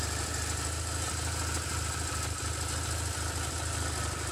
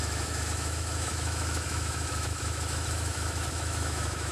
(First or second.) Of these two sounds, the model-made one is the second